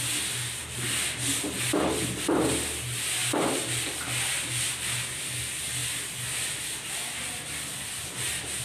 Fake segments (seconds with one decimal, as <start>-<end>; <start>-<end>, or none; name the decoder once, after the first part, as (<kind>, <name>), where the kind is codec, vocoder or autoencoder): 3.2-4.3 (vocoder, BigVGAN v2)